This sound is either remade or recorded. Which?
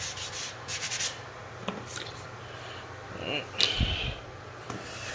recorded